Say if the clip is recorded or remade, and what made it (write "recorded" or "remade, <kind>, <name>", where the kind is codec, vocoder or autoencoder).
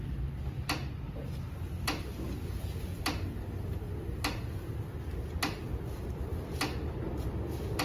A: recorded